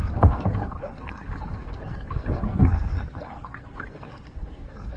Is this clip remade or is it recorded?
remade